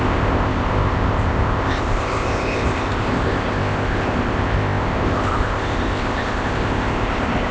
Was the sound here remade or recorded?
remade